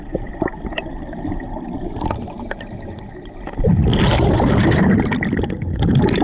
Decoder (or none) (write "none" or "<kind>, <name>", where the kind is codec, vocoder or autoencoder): none